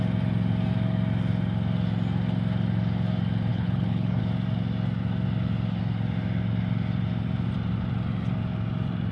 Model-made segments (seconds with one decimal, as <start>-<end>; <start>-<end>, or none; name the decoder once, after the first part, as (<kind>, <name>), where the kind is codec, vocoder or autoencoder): 3.5-4.2 (codec, HILCodec)